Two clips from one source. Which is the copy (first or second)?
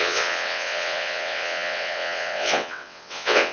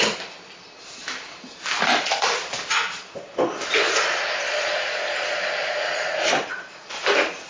first